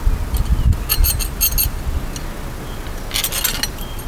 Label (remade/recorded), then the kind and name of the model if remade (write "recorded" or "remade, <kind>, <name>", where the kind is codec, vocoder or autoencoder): recorded